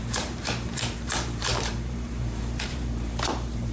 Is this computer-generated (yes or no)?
yes